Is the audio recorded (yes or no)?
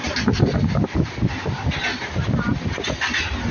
yes